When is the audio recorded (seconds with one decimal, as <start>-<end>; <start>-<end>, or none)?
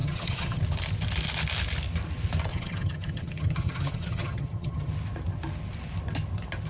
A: 0.6-2.5; 4.9-6.7